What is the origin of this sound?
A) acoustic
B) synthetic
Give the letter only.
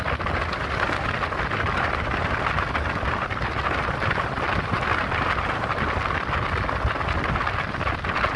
A